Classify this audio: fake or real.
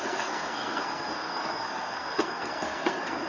fake